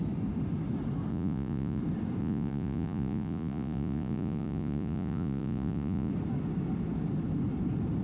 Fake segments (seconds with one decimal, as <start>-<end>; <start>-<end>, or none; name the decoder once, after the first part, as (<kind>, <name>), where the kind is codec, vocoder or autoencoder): 1.1-1.8 (vocoder, Vocos); 2.2-6.1